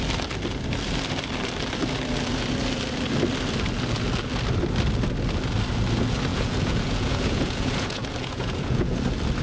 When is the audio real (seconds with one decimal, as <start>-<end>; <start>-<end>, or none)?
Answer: 0.0-6.3; 8.9-9.4